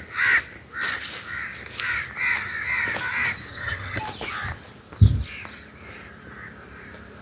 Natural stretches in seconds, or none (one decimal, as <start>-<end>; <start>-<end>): 0.0-3.5; 4.0-7.2

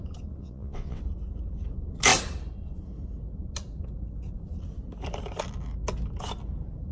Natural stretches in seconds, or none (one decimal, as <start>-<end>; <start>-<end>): 0.0-0.4; 1.0-6.9

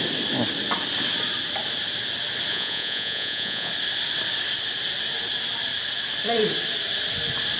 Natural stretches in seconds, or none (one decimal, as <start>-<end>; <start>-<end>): 0.0-2.5; 3.7-7.6